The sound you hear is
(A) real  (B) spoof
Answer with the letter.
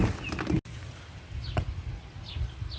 A